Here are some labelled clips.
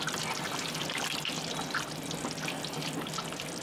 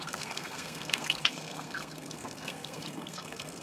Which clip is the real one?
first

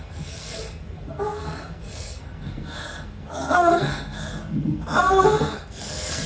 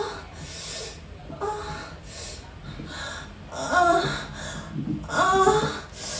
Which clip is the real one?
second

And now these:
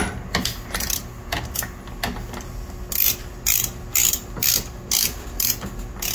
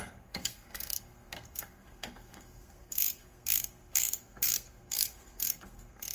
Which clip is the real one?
first